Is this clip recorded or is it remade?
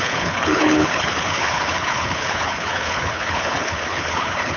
remade